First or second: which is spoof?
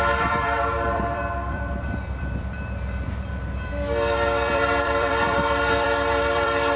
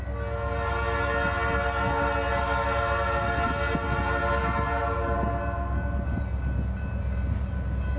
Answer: first